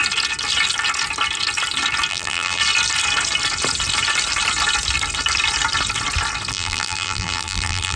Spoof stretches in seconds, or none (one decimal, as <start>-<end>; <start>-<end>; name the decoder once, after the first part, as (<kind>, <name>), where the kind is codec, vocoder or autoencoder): 2.1-2.6 (vocoder, BigVGAN v2); 6.5-8.0